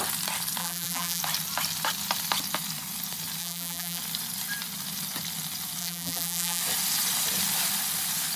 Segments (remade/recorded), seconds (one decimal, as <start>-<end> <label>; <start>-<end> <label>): 0.0-0.6 recorded; 0.6-1.2 remade; 1.2-3.4 recorded; 3.4-4.0 remade; 4.0-5.8 recorded; 5.8-6.6 remade; 6.6-8.4 recorded